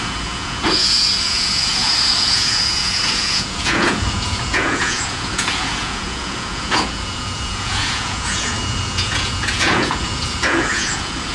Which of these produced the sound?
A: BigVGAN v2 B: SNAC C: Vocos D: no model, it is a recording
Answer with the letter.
C